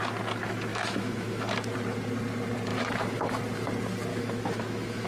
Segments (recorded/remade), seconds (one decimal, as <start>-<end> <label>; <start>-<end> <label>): 0.0-0.7 recorded; 0.7-1.5 remade; 1.5-2.7 recorded; 2.7-3.4 remade; 3.4-4.1 recorded; 4.1-5.1 remade